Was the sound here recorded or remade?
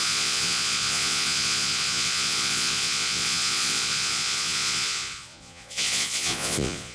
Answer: remade